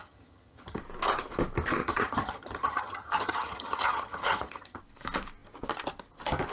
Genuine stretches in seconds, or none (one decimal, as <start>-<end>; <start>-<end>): 0.8-1.8; 4.8-6.5